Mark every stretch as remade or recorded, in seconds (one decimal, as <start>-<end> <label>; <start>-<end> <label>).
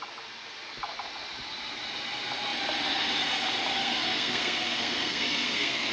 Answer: 0.0-3.8 recorded; 3.8-5.9 remade